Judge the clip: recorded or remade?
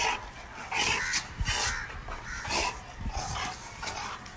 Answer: recorded